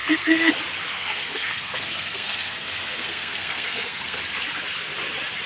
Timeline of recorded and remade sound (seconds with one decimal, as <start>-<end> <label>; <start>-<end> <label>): 0.0-0.5 remade; 0.5-0.9 recorded; 0.9-4.2 remade; 4.2-5.5 recorded